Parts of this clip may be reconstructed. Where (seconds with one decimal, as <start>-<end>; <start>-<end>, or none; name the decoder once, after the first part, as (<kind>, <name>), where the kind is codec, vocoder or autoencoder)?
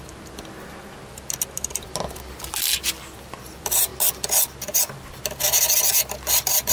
none